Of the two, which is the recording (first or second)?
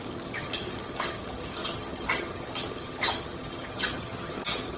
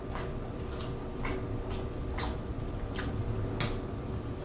second